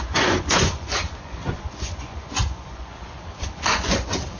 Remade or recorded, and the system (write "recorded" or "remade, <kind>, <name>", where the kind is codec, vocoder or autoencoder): remade, vocoder, Vocos